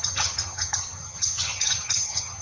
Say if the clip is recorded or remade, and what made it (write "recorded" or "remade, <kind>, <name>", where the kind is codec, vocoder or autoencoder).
remade, vocoder, HiFi-GAN